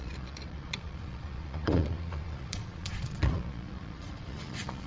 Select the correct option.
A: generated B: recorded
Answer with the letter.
A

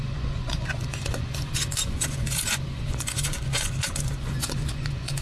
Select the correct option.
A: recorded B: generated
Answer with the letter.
B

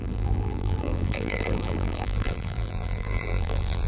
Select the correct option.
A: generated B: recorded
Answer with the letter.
A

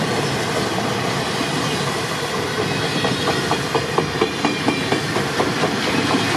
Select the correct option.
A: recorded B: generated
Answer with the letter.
A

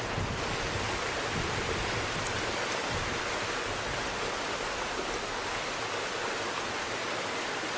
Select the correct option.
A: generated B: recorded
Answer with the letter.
B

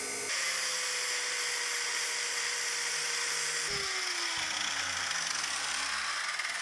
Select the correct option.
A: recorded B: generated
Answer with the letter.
A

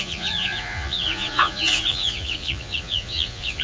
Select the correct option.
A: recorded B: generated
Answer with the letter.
B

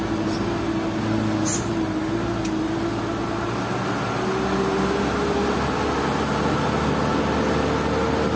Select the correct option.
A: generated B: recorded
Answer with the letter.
B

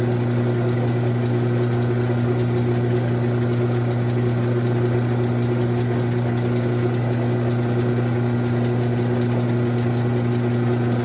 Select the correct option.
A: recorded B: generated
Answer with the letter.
A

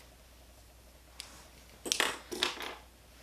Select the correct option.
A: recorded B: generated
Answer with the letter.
A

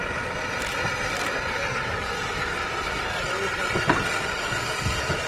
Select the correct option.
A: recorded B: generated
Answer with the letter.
A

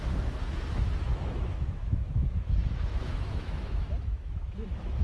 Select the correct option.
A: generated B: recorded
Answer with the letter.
A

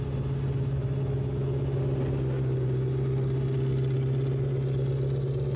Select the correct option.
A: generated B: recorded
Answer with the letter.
B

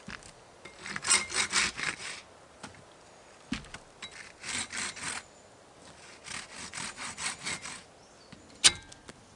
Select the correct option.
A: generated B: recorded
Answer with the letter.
B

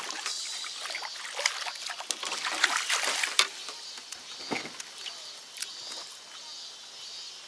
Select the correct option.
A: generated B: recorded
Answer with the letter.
B